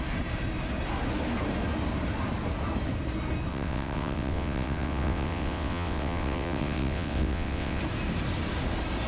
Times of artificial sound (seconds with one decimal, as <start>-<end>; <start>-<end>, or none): 3.5-7.8